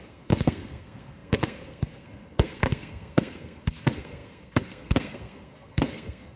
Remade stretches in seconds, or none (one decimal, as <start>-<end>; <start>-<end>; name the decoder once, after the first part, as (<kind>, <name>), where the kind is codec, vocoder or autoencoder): 0.0-6.4 (codec, SNAC)